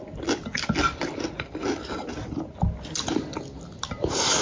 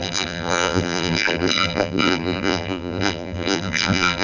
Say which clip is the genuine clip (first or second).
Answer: first